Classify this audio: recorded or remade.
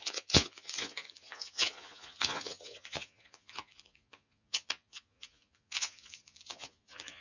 remade